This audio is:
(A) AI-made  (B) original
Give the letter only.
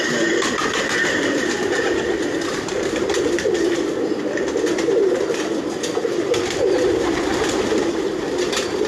B